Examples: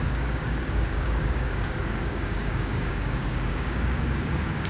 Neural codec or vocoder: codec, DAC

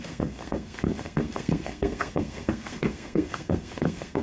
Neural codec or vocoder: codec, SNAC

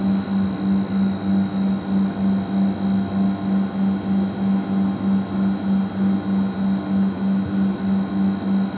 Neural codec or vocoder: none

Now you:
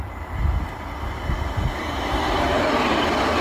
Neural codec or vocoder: none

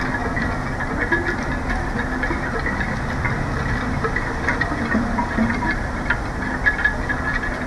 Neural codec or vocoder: none